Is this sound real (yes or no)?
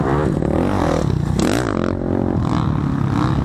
yes